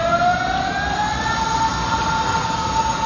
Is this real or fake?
real